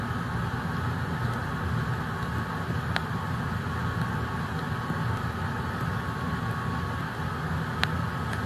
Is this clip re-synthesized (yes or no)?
no